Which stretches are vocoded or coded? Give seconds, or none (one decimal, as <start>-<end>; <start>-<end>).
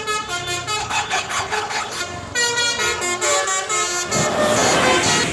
0.8-2.0